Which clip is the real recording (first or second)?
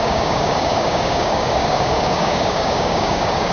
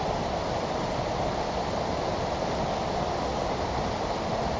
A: second